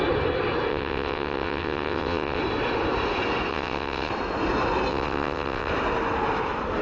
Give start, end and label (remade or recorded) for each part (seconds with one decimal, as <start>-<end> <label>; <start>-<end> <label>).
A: 0.0-0.7 recorded; 0.7-2.4 remade; 2.4-3.5 recorded; 3.5-4.1 remade; 4.1-4.9 recorded; 4.9-5.7 remade; 5.7-6.8 recorded